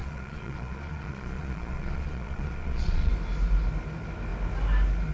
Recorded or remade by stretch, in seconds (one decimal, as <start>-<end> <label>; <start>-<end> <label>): 0.0-3.1 remade; 3.1-5.1 recorded